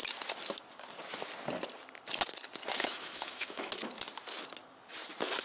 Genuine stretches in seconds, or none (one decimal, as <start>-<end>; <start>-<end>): 0.0-2.7; 3.7-5.4